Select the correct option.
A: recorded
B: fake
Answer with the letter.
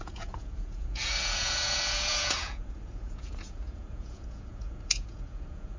B